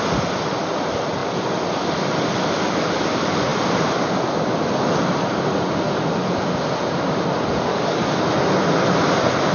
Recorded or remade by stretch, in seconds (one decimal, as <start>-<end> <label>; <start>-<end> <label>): 0.0-7.7 recorded; 7.7-8.2 remade; 8.2-9.5 recorded